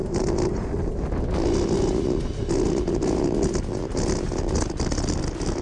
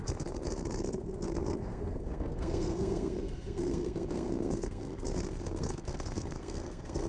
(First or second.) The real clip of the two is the first